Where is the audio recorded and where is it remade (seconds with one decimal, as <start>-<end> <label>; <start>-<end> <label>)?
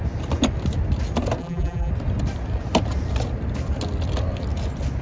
0.0-1.4 recorded; 1.4-1.9 remade; 1.9-5.0 recorded